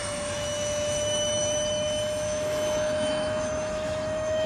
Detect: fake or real fake